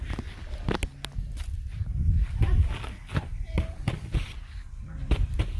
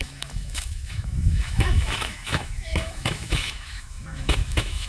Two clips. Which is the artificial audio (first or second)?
second